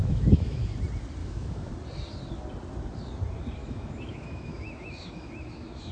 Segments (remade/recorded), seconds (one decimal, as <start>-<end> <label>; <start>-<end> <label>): 0.0-0.7 remade; 0.7-1.2 recorded; 1.2-1.7 remade; 1.7-3.6 recorded; 3.6-5.9 remade